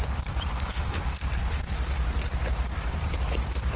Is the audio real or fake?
fake